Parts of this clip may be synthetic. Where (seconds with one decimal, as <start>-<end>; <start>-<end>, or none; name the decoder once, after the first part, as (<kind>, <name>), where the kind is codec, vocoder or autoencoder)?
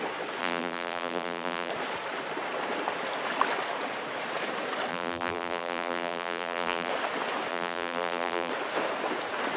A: 0.4-1.7 (vocoder, BigVGAN v2); 4.9-6.9; 7.5-8.5